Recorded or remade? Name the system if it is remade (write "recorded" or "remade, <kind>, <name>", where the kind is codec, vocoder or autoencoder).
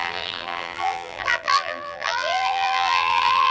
remade, vocoder, BigVGAN v2